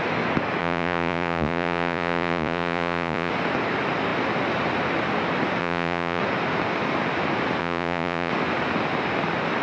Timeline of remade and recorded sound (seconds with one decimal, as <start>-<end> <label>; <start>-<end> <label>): 0.0-0.6 recorded; 0.6-3.3 remade; 3.3-5.6 recorded; 5.6-6.2 remade; 6.2-7.6 recorded; 7.6-8.3 remade; 8.3-9.6 recorded